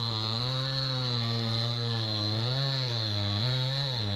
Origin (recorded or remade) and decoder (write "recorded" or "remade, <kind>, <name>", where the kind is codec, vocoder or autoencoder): remade, codec, SNAC